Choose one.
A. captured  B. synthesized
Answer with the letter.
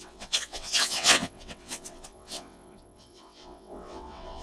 B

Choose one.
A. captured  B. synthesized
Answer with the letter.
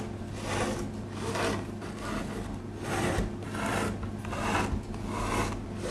A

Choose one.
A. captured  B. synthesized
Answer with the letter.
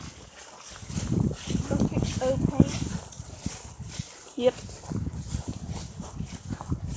A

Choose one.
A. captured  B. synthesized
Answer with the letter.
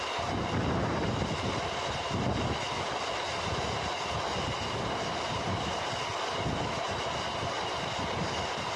A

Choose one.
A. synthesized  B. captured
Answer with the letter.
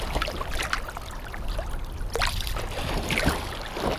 B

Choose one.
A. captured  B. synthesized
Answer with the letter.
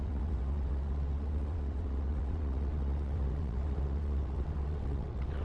B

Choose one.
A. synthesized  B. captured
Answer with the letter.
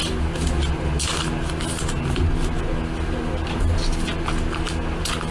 B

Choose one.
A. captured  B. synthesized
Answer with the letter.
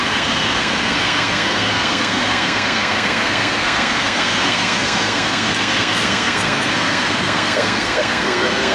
B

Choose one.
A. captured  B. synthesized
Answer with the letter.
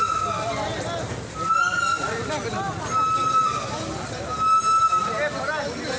A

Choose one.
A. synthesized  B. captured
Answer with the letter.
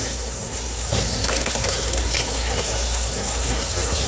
A